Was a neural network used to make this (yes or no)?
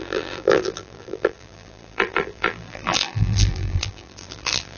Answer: yes